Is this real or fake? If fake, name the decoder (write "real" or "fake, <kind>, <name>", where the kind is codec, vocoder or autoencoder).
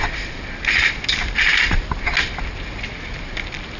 real